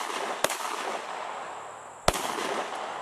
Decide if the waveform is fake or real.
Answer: real